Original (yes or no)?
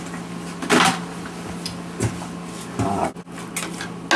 yes